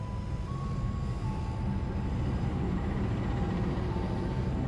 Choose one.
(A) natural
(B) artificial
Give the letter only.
A